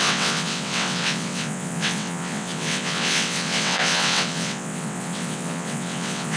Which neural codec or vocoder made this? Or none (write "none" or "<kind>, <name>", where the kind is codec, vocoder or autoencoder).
vocoder, WaveNeXt